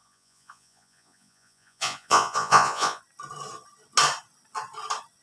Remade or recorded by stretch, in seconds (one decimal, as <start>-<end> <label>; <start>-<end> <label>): 0.0-3.0 remade; 3.0-5.2 recorded